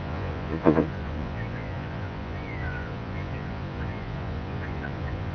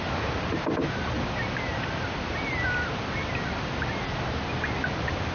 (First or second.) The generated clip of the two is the first